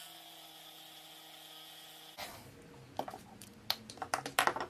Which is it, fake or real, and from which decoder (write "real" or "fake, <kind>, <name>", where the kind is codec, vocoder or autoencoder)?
real